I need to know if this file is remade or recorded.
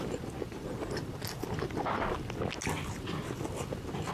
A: recorded